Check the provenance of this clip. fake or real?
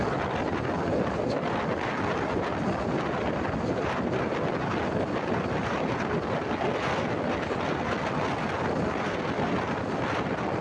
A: real